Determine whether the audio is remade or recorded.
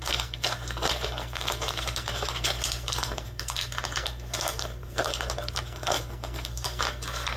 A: remade